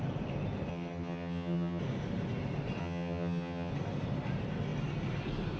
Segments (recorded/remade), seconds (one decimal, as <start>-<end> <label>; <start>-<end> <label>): 0.0-0.7 recorded; 0.7-1.8 remade; 1.8-2.8 recorded; 2.8-3.7 remade; 3.7-5.6 recorded